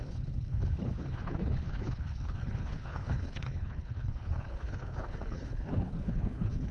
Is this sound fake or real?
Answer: fake